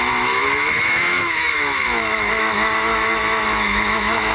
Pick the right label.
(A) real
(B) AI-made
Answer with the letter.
B